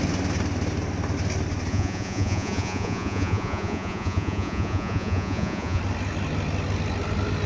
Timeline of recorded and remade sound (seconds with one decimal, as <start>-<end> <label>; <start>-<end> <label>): 0.0-1.7 recorded; 1.7-5.8 remade; 5.8-7.5 recorded